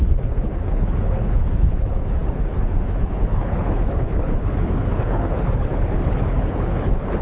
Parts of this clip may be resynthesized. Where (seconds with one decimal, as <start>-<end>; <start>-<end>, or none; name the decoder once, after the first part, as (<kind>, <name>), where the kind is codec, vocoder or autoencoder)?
0.0-7.2 (codec, HILCodec)

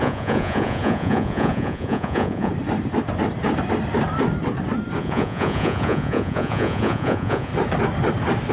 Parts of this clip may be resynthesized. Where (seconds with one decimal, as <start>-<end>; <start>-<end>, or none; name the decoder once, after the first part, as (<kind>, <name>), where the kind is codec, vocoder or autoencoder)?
0.0-2.5 (vocoder, Vocos); 5.0-7.5

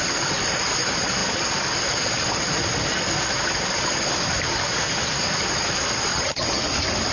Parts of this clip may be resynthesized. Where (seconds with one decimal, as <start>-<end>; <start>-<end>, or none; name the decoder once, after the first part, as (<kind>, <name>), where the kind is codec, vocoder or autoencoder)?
6.1-6.6 (vocoder, HiFi-GAN)

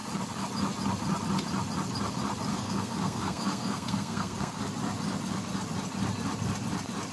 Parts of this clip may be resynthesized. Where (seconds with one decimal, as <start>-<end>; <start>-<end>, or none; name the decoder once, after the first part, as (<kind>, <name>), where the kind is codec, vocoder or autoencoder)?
2.5-4.6 (codec, SNAC)

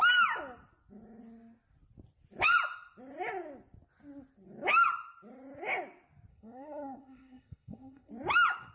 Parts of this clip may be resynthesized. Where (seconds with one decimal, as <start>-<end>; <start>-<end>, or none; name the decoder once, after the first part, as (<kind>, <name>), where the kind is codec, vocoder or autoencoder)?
6.3-8.1 (codec, SNAC)